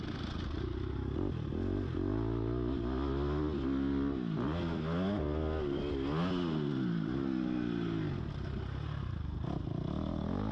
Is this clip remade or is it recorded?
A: recorded